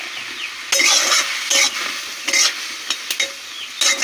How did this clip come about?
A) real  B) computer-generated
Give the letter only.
A